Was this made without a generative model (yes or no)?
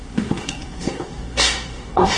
no